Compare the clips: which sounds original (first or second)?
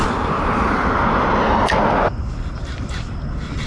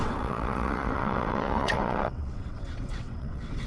first